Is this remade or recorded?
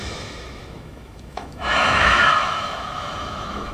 remade